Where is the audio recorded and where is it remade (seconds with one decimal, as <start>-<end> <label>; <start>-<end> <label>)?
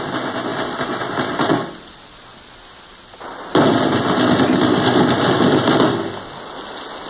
0.0-7.1 recorded